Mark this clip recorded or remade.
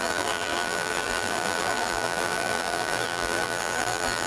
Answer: remade